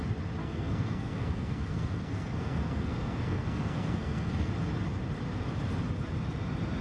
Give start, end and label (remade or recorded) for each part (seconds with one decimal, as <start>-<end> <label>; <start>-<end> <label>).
0.0-0.4 recorded; 0.4-4.5 remade; 4.5-6.8 recorded